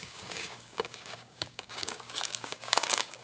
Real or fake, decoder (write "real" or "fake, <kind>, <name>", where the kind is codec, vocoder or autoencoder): fake, codec, DAC